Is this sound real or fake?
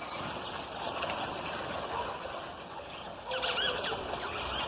real